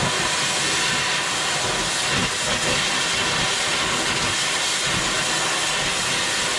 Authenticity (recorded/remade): recorded